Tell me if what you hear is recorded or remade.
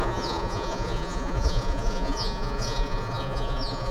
remade